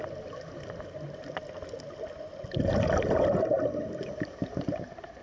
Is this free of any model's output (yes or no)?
yes